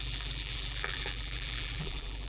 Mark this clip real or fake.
fake